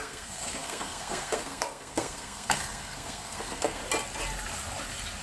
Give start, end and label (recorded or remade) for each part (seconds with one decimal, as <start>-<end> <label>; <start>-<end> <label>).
0.0-3.8 remade; 3.8-5.2 recorded